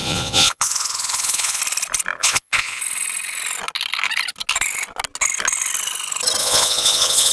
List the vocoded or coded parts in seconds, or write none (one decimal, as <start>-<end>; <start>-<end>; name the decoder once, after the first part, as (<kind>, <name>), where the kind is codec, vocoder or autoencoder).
0.0-1.6 (vocoder, Vocos); 2.2-2.8; 6.4-7.3